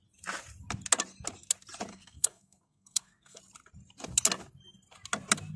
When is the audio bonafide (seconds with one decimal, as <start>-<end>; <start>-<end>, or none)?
0.0-1.9; 3.4-5.6